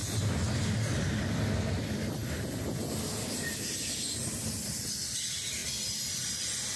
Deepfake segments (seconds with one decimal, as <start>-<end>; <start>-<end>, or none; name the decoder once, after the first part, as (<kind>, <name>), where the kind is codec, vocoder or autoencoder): none